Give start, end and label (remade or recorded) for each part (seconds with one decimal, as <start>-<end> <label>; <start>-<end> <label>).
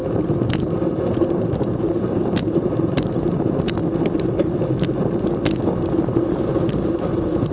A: 0.0-0.6 recorded; 0.6-3.8 remade; 3.8-6.7 recorded; 6.7-7.5 remade